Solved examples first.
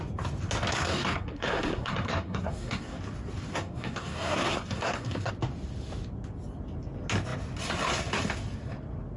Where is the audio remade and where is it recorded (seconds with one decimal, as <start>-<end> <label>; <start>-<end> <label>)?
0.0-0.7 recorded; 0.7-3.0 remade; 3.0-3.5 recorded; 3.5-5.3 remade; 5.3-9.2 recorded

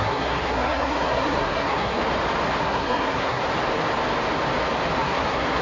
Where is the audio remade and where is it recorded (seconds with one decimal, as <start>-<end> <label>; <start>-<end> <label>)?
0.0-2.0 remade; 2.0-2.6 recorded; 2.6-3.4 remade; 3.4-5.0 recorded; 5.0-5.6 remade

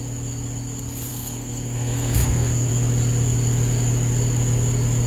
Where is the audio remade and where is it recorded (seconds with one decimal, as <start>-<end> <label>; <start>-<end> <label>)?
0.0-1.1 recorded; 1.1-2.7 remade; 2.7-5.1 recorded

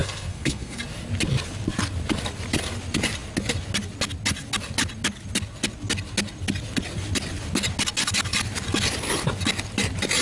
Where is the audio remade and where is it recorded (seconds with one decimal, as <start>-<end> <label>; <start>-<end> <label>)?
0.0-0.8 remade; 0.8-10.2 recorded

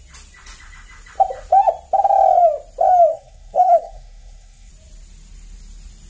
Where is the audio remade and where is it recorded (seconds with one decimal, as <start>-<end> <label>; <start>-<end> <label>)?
0.0-3.1 recorded; 3.1-4.7 remade; 4.7-6.1 recorded

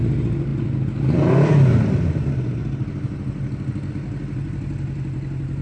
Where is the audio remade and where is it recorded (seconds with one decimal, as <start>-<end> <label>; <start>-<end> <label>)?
0.0-5.6 recorded

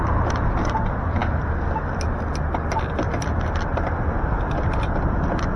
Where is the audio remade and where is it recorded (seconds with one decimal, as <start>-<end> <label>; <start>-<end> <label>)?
0.0-5.6 recorded